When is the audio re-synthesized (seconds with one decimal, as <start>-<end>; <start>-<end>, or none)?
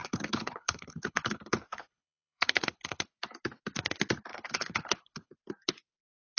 0.0-3.1; 4.3-5.3